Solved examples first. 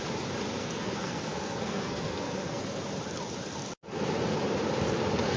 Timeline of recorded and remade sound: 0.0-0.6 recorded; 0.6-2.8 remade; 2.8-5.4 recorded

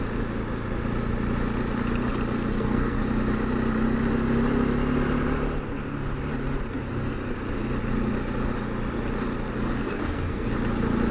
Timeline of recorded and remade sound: 0.0-2.5 recorded; 2.5-3.0 remade; 3.0-9.8 recorded; 9.8-10.5 remade; 10.5-11.1 recorded

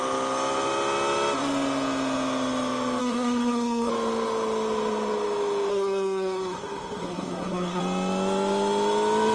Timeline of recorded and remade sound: 0.0-3.0 recorded; 3.0-3.9 remade; 3.9-5.7 recorded; 5.7-7.8 remade; 7.8-9.3 recorded